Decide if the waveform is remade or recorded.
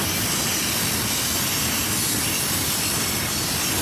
recorded